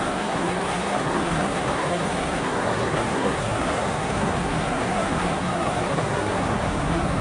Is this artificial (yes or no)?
yes